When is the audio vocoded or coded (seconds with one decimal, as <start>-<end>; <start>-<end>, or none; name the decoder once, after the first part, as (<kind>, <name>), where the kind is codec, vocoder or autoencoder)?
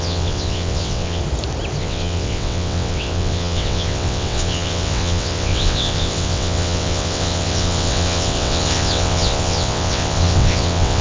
0.0-1.2 (vocoder, WaveNeXt); 1.8-11.0